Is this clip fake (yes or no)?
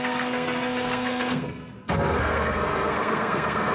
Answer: yes